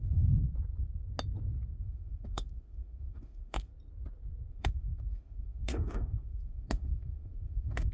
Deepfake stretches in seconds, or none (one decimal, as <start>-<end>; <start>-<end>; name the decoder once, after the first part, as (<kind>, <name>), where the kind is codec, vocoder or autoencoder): 0.0-0.4 (autoencoder, DAC-VAE); 1.8-3.7; 4.5-7.9